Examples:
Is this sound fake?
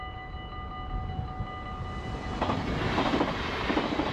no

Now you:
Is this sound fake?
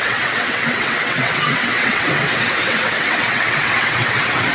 yes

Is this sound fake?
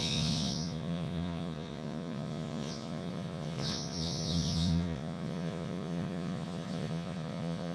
yes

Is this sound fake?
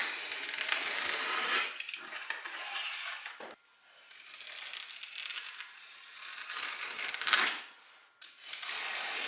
no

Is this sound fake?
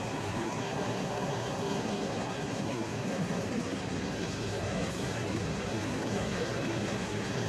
yes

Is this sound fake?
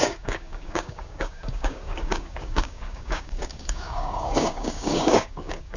yes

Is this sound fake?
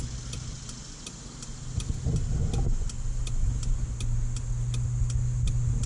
no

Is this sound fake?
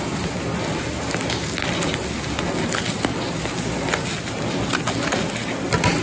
no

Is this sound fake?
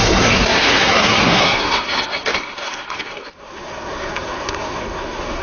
yes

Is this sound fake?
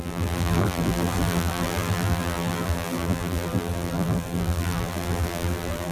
yes